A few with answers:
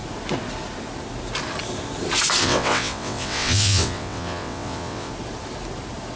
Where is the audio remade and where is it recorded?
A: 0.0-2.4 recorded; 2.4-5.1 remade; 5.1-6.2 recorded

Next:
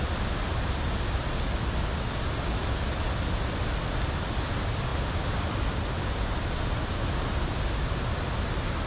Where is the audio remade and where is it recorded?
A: 0.0-8.9 recorded

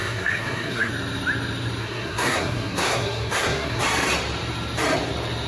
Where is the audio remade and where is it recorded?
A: 0.0-0.9 remade; 0.9-1.8 recorded; 1.8-3.8 remade; 3.8-5.5 recorded

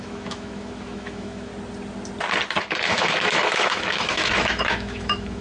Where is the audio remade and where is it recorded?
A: 0.0-1.5 remade; 1.5-2.6 recorded; 2.6-5.4 remade

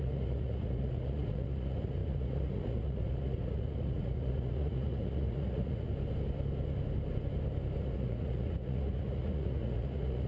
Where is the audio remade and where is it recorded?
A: 0.0-5.9 remade; 5.9-7.8 recorded; 7.8-10.3 remade

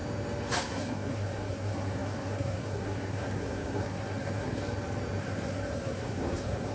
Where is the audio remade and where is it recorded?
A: 0.0-0.6 recorded; 0.6-4.6 remade; 4.6-5.2 recorded; 5.2-6.7 remade